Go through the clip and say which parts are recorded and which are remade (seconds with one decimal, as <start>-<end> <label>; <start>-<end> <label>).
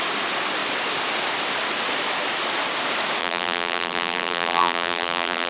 0.0-3.2 recorded; 3.2-5.5 remade